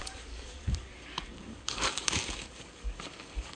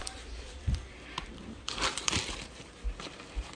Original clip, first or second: second